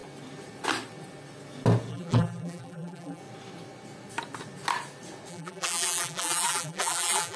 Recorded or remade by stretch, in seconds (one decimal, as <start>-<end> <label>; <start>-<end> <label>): 0.0-1.9 recorded; 1.9-3.2 remade; 3.2-5.3 recorded; 5.3-7.4 remade

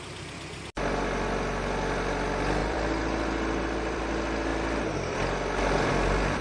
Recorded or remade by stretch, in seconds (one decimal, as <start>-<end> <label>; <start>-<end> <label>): 0.0-2.6 recorded; 2.6-4.0 remade; 4.0-6.4 recorded

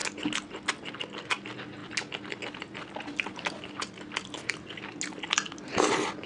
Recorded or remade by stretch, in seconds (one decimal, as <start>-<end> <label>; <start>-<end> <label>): 0.0-6.3 recorded

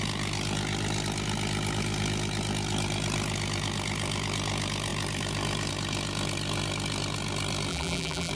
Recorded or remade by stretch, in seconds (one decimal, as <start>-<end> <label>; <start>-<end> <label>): 0.0-7.7 recorded; 7.7-8.3 remade

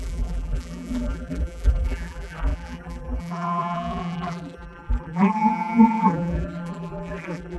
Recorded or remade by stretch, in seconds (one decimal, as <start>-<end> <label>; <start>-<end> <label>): 0.0-7.6 remade